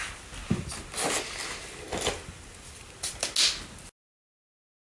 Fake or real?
real